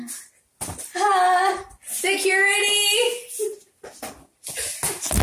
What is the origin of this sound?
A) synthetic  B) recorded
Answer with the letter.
B